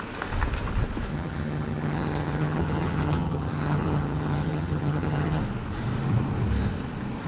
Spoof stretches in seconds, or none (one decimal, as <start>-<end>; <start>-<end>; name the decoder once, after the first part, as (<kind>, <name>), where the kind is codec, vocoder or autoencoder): 1.1-5.4 (vocoder, HiFi-GAN)